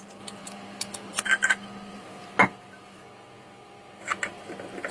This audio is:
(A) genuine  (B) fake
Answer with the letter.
A